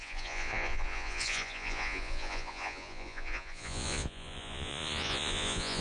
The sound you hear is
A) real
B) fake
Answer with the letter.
B